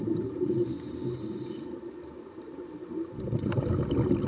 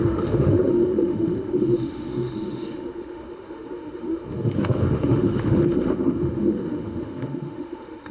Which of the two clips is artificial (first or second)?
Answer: second